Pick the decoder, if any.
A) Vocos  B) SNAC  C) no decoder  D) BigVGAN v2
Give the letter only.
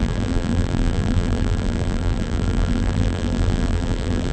D